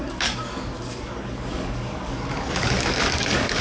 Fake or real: fake